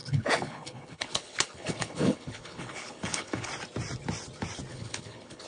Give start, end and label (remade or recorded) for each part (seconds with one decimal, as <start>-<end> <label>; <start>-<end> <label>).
0.0-3.5 remade; 3.5-4.7 recorded; 4.7-5.5 remade